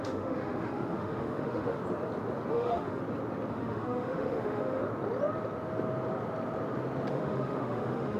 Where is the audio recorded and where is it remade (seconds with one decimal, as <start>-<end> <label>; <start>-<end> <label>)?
0.0-1.8 remade; 1.8-2.5 recorded; 2.5-3.0 remade; 3.0-3.5 recorded; 3.5-4.8 remade; 4.8-7.1 recorded; 7.1-8.2 remade